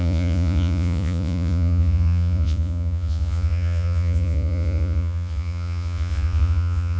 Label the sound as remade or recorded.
remade